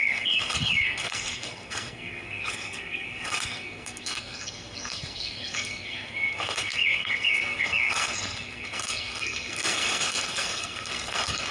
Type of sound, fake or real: fake